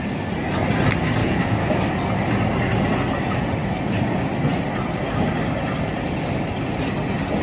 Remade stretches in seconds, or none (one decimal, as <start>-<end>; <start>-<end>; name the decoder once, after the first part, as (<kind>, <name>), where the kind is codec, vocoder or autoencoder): 1.2-1.9 (codec, DAC)